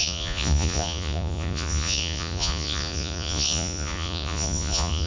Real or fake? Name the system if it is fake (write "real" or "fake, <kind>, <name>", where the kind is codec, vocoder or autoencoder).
fake, vocoder, Vocos